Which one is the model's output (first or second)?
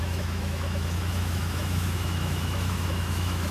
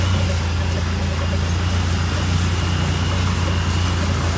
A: first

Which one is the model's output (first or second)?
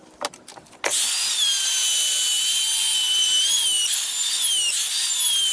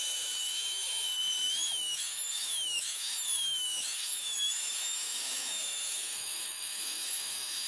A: second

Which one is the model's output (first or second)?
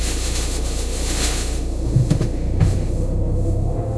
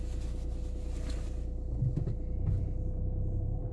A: first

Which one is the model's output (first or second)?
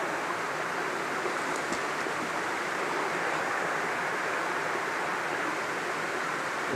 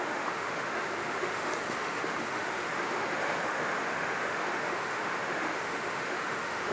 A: second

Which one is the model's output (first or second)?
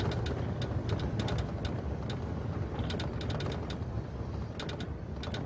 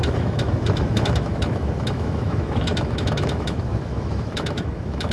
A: second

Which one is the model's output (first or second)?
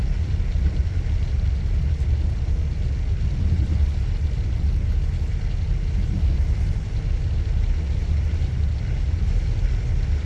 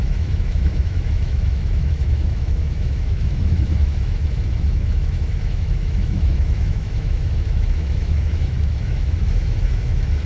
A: second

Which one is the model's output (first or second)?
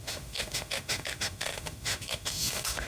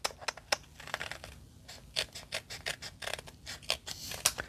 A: first